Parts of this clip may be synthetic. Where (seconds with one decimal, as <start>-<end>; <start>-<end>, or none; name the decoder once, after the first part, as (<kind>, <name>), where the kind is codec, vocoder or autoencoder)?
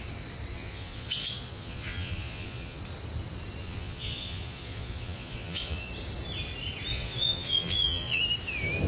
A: 0.5-2.8 (vocoder, Vocos); 3.6-5.9; 6.9-8.2